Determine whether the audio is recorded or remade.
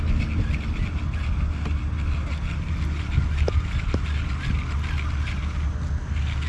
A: recorded